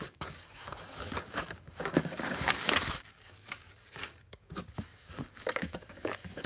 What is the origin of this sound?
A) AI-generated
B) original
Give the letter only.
A